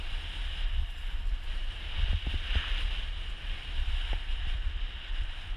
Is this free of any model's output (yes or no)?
yes